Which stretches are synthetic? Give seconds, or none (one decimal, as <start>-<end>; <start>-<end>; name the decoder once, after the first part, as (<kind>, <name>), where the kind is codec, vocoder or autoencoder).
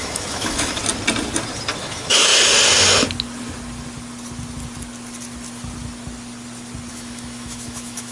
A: 0.0-0.8 (autoencoder, DAC-VAE); 1.8-2.3; 6.9-8.1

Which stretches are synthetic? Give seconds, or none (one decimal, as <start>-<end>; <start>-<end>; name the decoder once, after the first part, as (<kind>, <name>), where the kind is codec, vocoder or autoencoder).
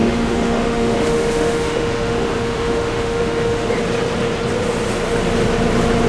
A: 0.0-3.7 (autoencoder, DAC-VAE)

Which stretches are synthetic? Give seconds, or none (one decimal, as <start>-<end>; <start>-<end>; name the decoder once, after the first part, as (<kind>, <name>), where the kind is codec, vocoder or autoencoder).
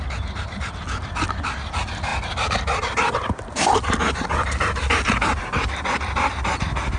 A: none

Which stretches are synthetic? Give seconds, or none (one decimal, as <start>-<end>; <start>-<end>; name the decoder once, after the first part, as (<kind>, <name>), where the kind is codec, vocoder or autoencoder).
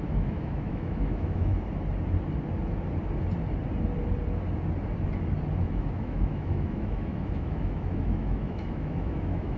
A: 0.0-1.5 (autoencoder, DAC-VAE); 5.6-9.6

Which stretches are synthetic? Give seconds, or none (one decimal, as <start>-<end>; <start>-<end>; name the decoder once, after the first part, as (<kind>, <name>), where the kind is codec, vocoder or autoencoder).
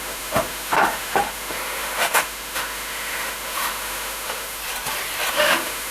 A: 0.0-4.6 (autoencoder, DAC-VAE); 5.3-5.9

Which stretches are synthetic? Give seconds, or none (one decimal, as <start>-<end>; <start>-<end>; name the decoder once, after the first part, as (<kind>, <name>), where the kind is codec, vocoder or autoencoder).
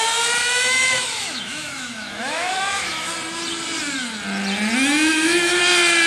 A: 0.4-3.1 (autoencoder, DAC-VAE); 5.1-5.6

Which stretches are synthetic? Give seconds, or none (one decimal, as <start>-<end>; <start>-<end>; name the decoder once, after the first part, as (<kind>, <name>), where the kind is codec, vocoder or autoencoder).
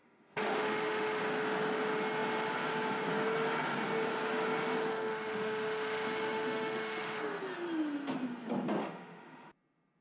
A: 0.0-1.2 (autoencoder, DAC-VAE); 4.9-7.2; 8.8-9.5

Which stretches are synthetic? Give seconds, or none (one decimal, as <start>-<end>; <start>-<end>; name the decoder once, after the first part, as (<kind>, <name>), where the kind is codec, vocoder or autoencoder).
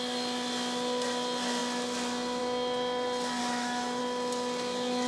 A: 3.4-4.0 (autoencoder, DAC-VAE)